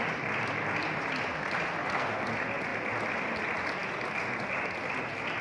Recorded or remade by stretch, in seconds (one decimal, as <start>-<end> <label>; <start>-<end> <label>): 0.0-1.8 recorded; 1.8-2.3 remade; 2.3-5.4 recorded